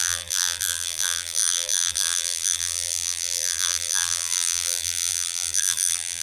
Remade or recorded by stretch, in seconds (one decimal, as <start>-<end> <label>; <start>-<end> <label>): 0.0-6.2 remade